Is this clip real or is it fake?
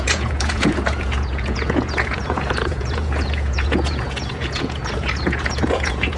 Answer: fake